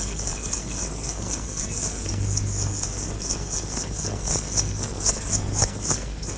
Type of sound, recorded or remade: remade